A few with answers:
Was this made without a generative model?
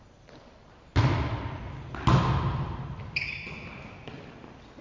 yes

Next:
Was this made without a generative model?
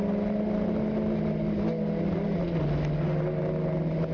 yes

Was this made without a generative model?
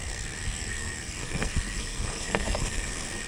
no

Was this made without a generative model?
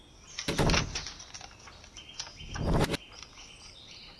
yes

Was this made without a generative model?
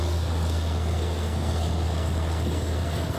no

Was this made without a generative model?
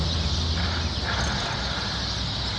yes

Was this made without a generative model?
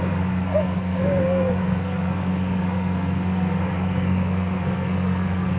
no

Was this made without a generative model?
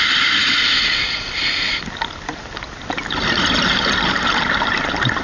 yes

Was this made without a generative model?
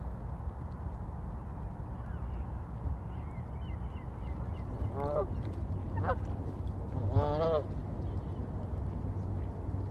yes